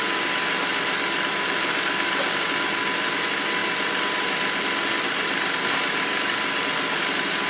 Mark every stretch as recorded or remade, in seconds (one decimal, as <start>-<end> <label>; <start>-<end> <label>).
0.0-7.5 recorded